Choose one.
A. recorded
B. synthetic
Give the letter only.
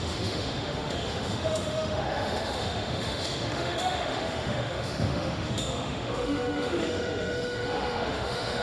B